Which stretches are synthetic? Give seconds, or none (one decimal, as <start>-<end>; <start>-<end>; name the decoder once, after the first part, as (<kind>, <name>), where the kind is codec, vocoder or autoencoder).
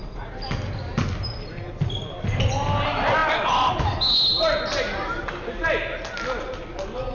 none